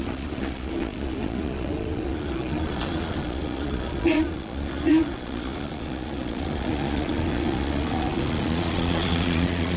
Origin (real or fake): fake